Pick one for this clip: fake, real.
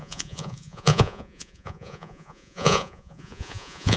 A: fake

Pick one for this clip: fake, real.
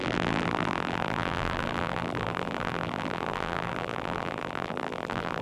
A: fake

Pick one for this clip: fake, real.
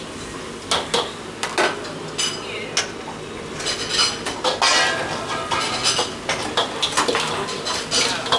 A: real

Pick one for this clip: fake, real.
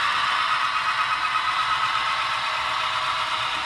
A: real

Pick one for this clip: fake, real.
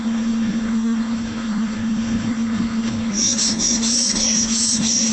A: fake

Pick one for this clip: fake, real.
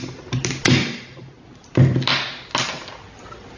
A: real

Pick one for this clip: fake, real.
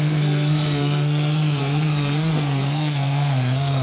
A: fake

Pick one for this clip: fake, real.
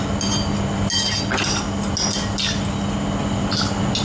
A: real